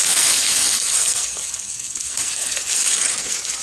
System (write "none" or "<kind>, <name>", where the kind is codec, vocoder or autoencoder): codec, SNAC